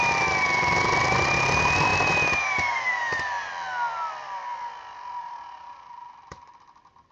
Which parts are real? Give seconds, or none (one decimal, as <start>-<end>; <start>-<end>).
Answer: none